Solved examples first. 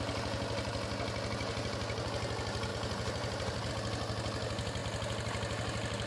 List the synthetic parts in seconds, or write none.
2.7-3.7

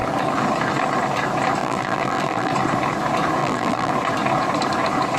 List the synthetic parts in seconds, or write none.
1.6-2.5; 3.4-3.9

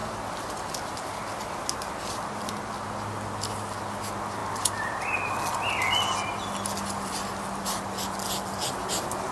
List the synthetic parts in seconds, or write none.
none

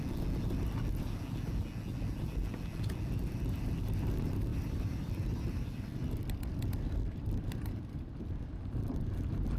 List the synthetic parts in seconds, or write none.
4.5-8.2